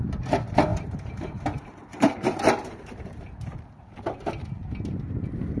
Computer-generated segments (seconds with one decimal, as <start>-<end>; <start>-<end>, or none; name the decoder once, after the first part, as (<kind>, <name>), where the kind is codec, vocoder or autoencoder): 0.7-4.0 (vocoder, BigVGAN v2)